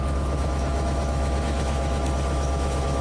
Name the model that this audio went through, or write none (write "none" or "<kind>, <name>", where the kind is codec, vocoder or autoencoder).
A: autoencoder, DAC-VAE